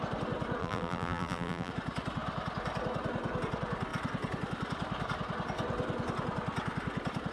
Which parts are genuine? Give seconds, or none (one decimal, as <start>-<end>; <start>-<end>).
0.0-0.6; 1.7-7.3